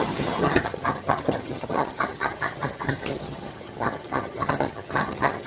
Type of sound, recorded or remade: remade